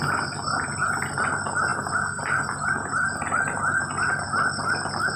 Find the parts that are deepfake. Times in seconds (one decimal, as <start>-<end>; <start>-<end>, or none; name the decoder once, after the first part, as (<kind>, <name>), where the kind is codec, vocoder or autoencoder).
none